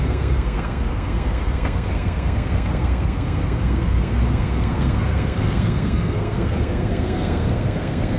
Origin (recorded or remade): remade